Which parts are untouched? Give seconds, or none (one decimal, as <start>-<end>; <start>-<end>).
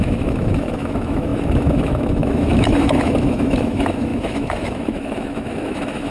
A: none